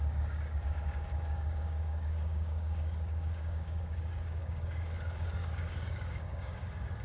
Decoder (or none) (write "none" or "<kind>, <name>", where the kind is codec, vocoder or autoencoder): codec, DAC